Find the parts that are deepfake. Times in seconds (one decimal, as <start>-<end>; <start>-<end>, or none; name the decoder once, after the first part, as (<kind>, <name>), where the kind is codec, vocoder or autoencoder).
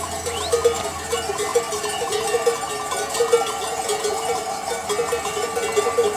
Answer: none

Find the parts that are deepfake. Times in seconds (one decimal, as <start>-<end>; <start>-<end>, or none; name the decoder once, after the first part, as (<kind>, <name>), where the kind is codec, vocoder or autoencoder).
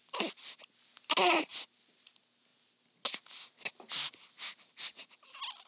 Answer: none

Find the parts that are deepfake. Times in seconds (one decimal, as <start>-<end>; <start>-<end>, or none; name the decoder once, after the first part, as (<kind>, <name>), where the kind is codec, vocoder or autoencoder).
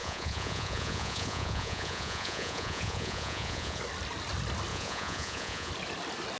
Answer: 0.0-3.8 (vocoder, Vocos); 4.7-5.7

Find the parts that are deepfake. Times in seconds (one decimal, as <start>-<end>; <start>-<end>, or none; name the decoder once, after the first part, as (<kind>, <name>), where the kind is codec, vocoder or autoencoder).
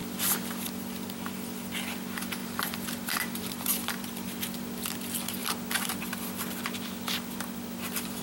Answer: 2.4-4.1 (vocoder, BigVGAN v2)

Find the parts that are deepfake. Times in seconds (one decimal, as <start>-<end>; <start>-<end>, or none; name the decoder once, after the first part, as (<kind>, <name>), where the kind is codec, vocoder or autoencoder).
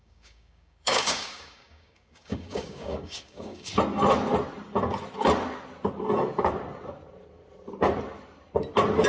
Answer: 0.0-3.7 (codec, DAC)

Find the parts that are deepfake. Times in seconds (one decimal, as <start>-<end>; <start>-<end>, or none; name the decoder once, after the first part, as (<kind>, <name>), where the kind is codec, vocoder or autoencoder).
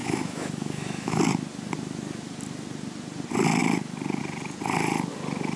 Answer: 0.0-1.2 (autoencoder, DAC-VAE)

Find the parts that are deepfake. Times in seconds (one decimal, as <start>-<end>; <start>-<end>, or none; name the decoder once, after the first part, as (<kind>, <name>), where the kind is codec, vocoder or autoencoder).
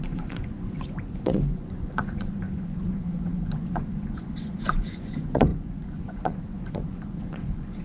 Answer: 0.0-7.8 (vocoder, Vocos)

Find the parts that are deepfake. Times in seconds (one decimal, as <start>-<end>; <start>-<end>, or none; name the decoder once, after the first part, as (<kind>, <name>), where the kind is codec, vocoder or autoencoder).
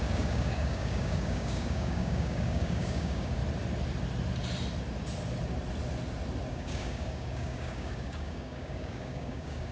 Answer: 0.0-3.4 (codec, DAC); 6.5-9.7